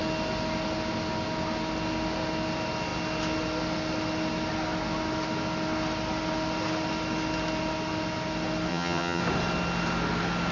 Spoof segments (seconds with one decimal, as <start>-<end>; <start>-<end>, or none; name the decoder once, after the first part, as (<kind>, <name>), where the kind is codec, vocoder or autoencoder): 8.7-9.2 (vocoder, HiFi-GAN)